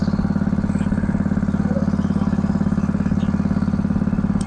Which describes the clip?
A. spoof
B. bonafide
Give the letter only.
B